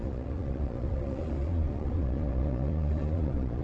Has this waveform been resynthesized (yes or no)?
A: yes